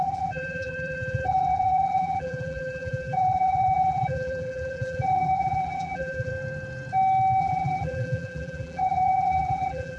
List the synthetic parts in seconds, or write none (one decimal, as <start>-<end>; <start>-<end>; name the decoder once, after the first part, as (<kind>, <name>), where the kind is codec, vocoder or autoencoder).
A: 0.0-6.3 (vocoder, BigVGAN v2); 7.4-10.0

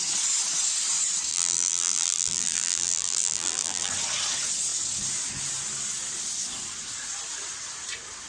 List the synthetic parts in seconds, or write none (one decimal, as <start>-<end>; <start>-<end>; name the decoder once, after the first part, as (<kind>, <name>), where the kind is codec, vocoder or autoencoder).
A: 1.3-3.9 (vocoder, BigVGAN v2)

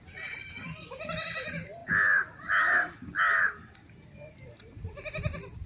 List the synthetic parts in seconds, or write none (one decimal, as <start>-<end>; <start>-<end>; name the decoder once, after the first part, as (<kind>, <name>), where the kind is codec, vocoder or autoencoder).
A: 0.0-5.7 (vocoder, BigVGAN v2)

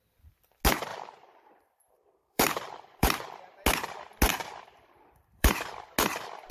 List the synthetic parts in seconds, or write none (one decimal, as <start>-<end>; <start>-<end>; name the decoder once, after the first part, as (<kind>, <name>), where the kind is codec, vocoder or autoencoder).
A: 0.9-3.2 (vocoder, BigVGAN v2); 4.3-5.5

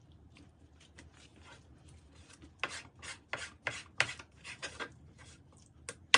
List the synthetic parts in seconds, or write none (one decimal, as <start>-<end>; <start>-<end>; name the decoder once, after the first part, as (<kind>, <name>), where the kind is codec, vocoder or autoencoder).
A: 0.0-1.3 (vocoder, BigVGAN v2); 4.1-5.2

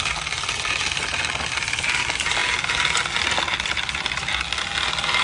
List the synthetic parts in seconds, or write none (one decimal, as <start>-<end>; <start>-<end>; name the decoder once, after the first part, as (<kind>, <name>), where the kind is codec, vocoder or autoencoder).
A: none

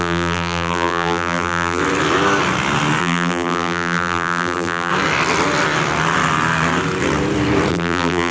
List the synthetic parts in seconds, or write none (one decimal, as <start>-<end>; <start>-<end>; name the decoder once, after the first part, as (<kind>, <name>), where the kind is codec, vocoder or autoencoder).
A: 0.0-1.8 (vocoder, BigVGAN v2); 3.0-4.9; 7.7-8.3

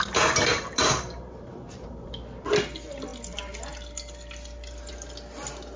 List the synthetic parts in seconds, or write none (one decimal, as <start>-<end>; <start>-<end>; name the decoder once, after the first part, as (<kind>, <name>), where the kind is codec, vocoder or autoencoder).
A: 0.8-2.1 (vocoder, BigVGAN v2)